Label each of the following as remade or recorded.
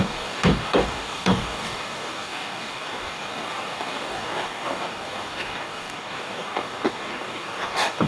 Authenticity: remade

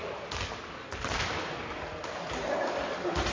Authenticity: recorded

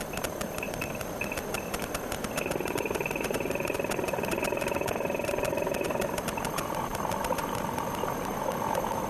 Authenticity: remade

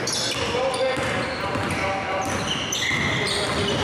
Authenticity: recorded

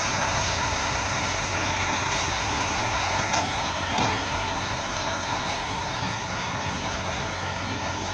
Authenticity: remade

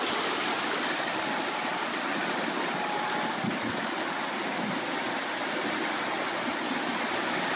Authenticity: recorded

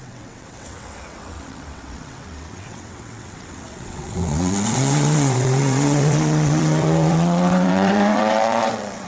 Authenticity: remade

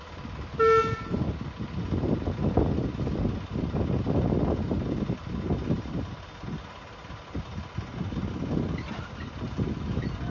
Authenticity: recorded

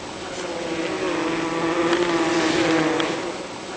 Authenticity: recorded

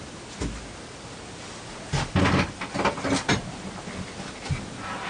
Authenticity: recorded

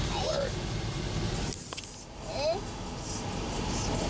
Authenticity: recorded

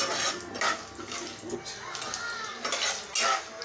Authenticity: recorded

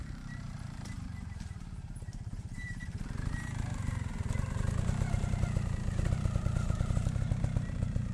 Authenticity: remade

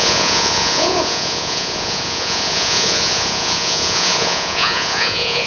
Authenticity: remade